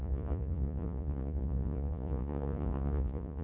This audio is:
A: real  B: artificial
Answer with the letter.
B